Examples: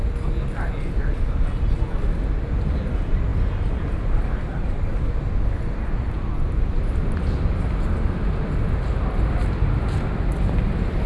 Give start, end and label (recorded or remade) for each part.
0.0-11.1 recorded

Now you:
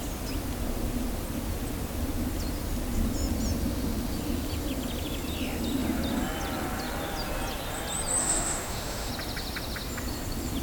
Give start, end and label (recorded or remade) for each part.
0.0-8.2 recorded; 8.2-9.1 remade; 9.1-10.6 recorded